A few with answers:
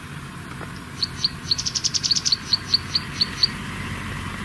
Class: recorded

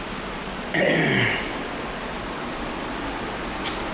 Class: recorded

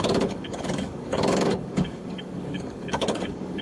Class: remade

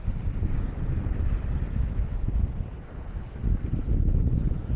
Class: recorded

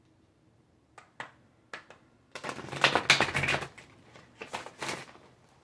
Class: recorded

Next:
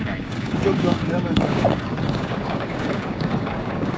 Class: remade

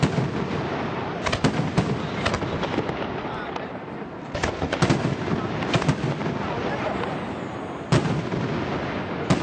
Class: recorded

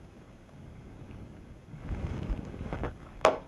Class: remade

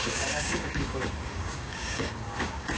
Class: remade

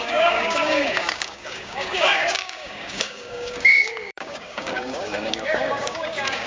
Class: remade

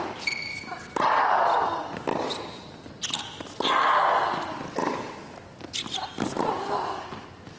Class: recorded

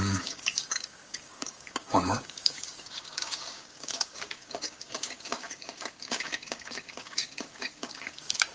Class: remade